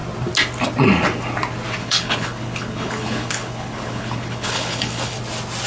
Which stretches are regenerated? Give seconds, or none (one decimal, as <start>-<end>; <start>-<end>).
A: 1.8-5.2